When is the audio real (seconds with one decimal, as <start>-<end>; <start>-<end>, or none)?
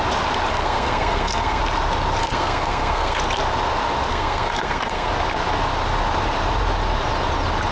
0.0-0.5; 1.6-2.2; 3.2-4.1; 5.1-7.7